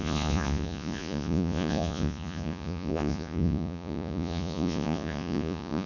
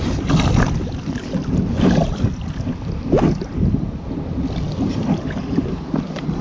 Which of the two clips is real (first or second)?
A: second